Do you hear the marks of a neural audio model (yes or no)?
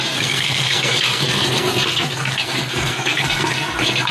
yes